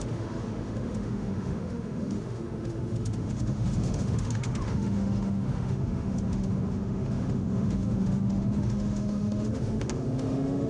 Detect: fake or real fake